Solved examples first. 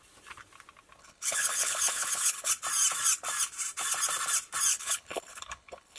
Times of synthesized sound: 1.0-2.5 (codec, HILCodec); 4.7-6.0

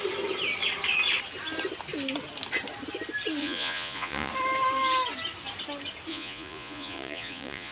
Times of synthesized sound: 3.4-4.3 (vocoder, Vocos); 6.1-7.7